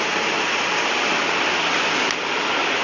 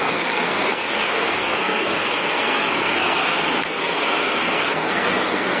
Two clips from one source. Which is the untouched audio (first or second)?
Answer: first